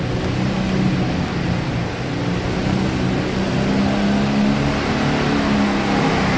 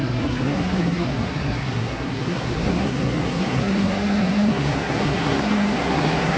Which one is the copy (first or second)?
second